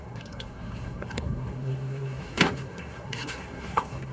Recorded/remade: remade